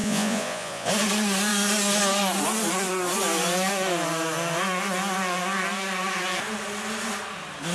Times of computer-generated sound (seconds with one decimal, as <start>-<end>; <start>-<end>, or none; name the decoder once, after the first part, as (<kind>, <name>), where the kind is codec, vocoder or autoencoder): 0.0-0.9 (vocoder, Vocos)